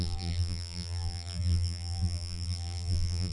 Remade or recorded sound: remade